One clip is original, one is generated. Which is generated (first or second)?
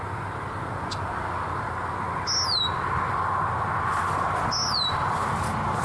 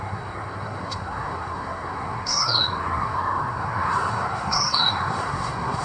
second